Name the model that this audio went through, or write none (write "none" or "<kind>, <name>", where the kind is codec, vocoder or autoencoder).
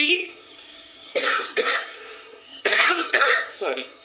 codec, SNAC